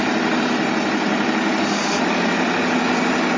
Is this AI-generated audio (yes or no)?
no